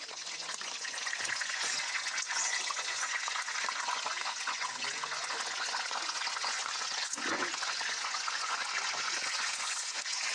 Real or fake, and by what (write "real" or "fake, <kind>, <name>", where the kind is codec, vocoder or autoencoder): fake, vocoder, Vocos